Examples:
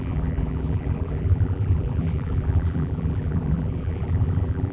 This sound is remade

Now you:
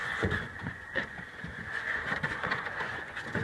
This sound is remade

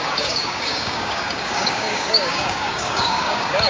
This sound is remade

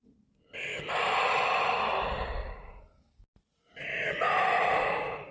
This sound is recorded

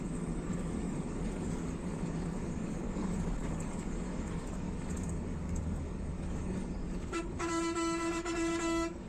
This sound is remade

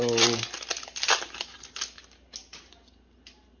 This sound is recorded